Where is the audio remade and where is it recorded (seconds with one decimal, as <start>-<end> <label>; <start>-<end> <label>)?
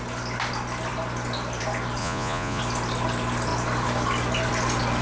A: 0.0-2.0 recorded; 2.0-2.6 remade; 2.6-5.0 recorded